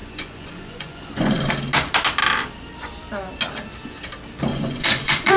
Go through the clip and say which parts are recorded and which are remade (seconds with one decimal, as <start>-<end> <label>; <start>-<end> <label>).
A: 0.0-1.5 remade; 1.5-4.5 recorded; 4.5-5.4 remade